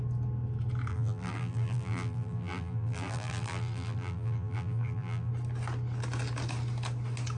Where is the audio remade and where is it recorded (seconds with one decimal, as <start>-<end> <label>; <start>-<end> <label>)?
0.0-0.9 recorded; 0.9-5.3 remade; 5.3-7.4 recorded